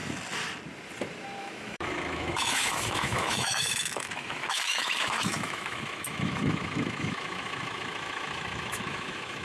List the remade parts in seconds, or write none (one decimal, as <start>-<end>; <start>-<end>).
1.4-9.4